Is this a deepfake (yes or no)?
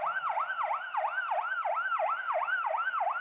yes